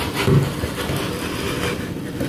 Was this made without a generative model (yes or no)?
no